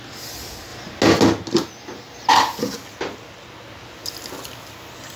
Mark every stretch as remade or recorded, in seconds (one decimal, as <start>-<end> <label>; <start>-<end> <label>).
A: 0.0-5.2 recorded